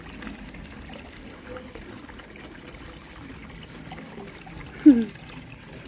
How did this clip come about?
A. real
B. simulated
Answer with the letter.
A